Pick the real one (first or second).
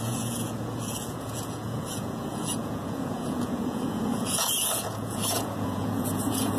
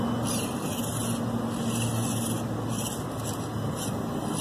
second